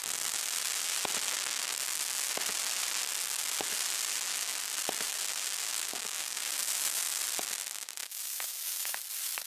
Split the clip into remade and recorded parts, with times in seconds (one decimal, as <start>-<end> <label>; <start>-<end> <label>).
0.0-5.7 recorded; 5.7-7.2 remade; 7.2-8.0 recorded; 8.0-9.0 remade; 9.0-9.5 recorded